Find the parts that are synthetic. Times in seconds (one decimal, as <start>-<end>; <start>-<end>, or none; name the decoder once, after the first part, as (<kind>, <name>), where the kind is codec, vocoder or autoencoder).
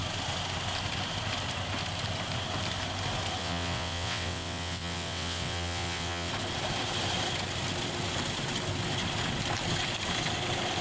3.4-6.3 (vocoder, WaveNeXt)